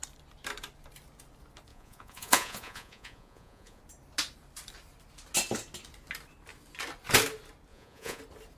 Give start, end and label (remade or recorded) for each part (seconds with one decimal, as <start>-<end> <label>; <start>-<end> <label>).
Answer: 0.0-1.7 recorded; 1.7-3.8 remade; 3.8-7.7 recorded; 7.7-8.2 remade; 8.2-8.6 recorded